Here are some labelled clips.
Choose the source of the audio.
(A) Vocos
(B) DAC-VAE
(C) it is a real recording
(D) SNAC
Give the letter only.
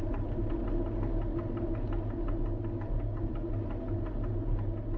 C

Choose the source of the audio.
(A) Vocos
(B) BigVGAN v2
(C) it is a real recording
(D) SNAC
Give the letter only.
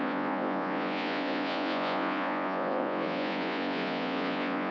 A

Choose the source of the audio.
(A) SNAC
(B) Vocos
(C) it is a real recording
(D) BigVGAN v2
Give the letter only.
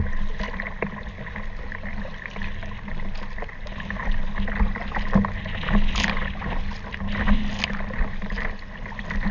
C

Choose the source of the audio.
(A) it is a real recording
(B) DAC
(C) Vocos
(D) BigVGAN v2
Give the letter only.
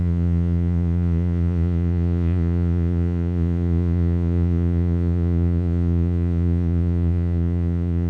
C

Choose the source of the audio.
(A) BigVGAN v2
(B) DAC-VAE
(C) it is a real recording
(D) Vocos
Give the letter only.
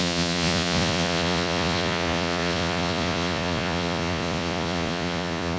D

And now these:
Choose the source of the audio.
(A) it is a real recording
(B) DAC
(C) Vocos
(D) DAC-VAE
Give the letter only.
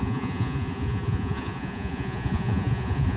C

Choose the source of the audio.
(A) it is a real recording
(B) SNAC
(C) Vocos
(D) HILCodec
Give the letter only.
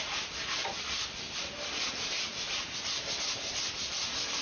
A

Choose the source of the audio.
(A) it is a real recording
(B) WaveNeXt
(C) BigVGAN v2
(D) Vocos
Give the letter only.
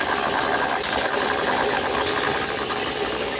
A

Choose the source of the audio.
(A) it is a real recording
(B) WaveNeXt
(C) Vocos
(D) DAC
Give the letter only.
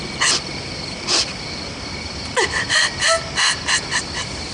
A